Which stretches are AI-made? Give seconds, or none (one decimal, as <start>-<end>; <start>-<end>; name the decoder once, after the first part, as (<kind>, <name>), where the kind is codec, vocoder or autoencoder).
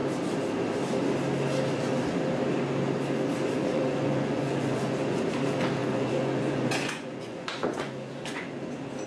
3.6-5.2 (vocoder, Vocos); 5.8-8.5